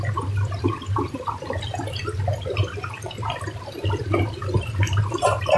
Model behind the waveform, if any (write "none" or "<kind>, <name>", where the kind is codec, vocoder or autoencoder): none